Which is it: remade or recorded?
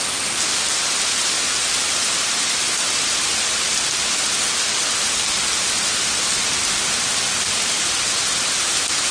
recorded